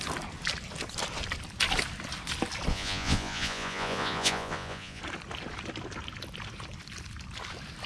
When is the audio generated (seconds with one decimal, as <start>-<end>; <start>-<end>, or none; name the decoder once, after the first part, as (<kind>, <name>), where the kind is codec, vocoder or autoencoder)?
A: 2.7-5.0 (vocoder, Vocos)